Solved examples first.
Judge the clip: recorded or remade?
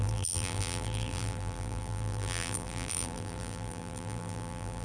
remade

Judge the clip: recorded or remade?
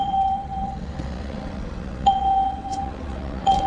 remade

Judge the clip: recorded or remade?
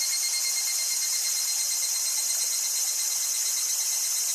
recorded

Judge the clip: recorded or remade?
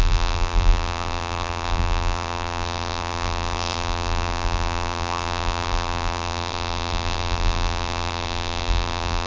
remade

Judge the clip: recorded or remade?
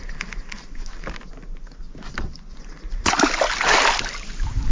recorded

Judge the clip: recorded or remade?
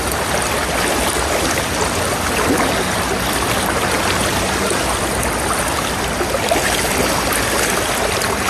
recorded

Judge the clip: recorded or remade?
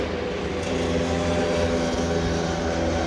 recorded